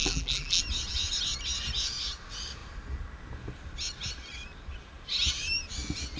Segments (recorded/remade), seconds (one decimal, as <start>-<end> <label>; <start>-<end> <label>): 0.0-0.6 remade; 0.6-6.2 recorded